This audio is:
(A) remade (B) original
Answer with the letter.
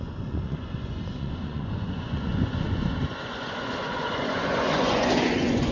A